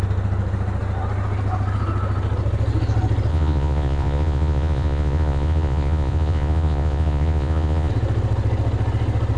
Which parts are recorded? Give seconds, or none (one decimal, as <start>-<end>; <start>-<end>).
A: 0.0-3.3; 7.9-9.4